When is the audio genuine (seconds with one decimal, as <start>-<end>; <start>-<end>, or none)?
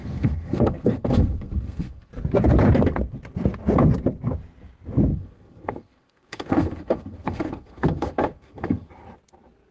2.1-5.1; 8.9-9.7